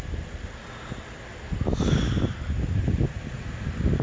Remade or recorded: recorded